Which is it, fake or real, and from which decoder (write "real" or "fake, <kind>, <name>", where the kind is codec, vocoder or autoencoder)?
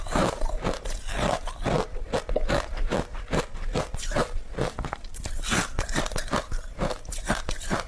real